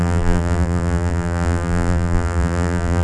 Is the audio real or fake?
fake